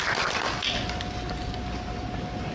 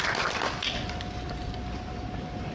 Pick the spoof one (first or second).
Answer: second